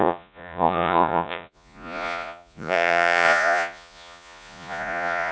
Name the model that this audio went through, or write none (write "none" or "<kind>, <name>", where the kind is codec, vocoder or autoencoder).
vocoder, Vocos